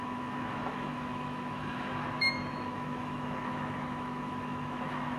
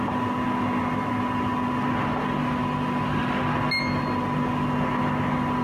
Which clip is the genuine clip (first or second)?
second